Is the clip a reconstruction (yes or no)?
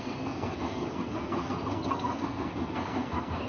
yes